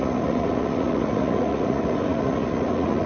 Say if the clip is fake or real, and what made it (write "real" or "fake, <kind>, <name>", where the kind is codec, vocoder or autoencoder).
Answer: fake, vocoder, Vocos